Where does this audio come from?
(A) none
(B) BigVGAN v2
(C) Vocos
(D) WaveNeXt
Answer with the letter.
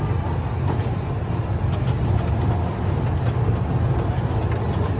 A